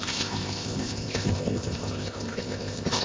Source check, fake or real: fake